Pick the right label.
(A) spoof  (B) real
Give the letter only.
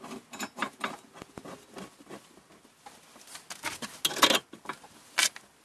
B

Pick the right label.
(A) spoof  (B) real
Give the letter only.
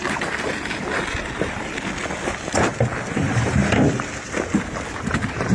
B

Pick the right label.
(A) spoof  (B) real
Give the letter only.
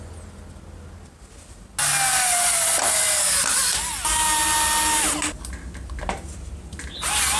B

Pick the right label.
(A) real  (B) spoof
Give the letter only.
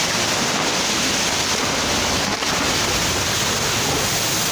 A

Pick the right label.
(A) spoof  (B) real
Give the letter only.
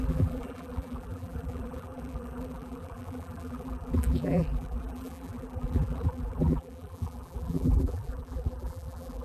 A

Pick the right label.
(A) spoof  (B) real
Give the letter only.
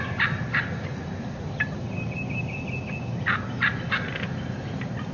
B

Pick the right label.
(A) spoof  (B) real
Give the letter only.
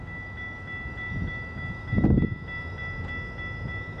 B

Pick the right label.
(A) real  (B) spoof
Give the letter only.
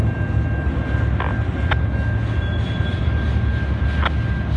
A